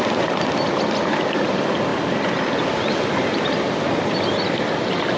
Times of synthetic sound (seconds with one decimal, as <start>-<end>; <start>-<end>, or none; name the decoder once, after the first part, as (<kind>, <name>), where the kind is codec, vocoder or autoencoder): 0.0-5.2 (vocoder, BigVGAN v2)